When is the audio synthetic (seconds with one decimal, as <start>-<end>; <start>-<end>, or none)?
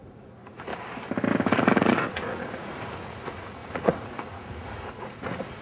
0.0-0.7; 1.5-5.6